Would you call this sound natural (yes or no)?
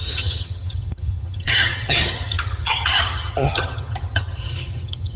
no